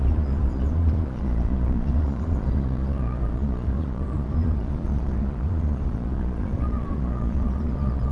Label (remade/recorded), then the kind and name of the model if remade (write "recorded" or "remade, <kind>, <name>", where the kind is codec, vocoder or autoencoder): remade, vocoder, Vocos